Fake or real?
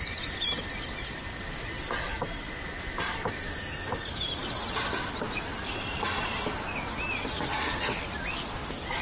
fake